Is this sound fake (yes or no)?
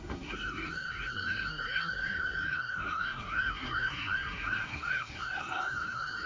yes